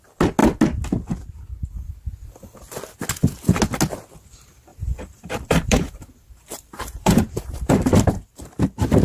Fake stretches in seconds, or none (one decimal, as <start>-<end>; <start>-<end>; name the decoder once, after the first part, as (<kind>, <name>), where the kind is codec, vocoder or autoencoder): 4.7-8.6 (vocoder, BigVGAN v2)